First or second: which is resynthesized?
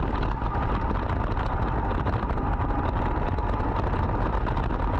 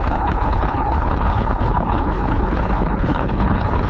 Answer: second